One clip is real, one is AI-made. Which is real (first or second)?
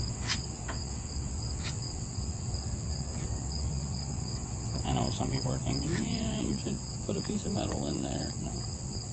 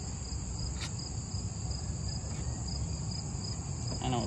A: second